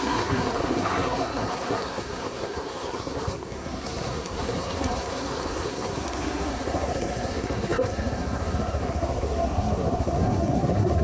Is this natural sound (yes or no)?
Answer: no